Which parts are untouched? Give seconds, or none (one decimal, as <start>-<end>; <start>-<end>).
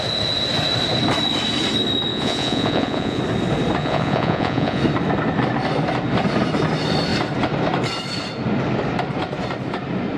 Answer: 0.0-2.1; 3.2-3.8; 4.8-10.2